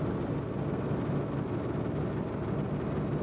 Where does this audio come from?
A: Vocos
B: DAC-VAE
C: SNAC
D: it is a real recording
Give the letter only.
D